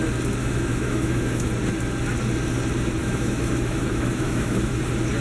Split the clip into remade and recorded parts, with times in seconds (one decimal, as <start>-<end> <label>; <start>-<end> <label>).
0.0-0.4 recorded; 0.4-1.5 remade; 1.5-3.0 recorded; 3.0-4.8 remade; 4.8-5.2 recorded